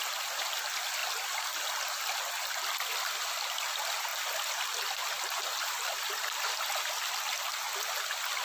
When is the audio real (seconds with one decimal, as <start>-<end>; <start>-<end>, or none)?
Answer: 0.0-8.4